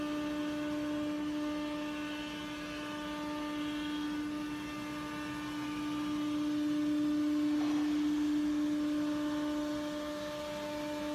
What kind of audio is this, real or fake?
real